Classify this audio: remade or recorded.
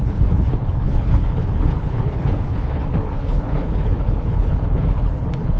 remade